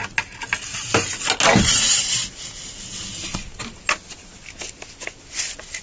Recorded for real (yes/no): yes